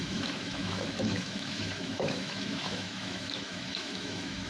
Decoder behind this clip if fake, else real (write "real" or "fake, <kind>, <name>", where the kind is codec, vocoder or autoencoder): fake, autoencoder, DAC-VAE